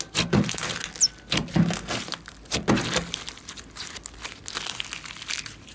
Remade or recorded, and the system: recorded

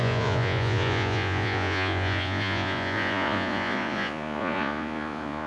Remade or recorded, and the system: remade, vocoder, Vocos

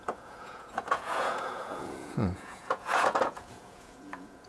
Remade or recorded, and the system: remade, vocoder, Vocos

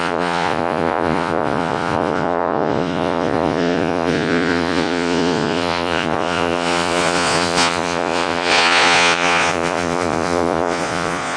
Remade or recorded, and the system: remade, vocoder, Vocos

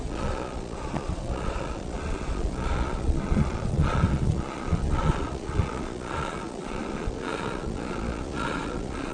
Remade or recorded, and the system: remade, vocoder, Vocos